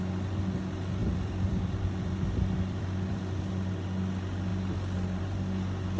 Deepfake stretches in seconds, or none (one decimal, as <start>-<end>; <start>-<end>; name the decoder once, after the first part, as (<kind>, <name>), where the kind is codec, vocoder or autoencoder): 1.0-3.7 (vocoder, BigVGAN v2)